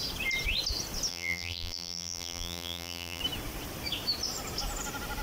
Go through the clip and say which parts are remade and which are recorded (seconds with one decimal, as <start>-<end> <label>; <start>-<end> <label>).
0.0-1.1 recorded; 1.1-3.2 remade; 3.2-5.2 recorded